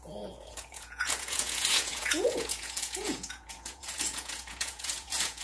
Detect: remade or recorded remade